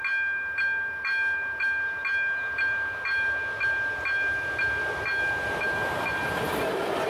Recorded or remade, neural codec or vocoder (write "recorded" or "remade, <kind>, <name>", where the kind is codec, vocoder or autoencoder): recorded